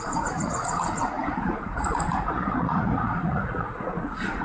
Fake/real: fake